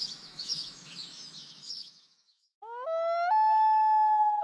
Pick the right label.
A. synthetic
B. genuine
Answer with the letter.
A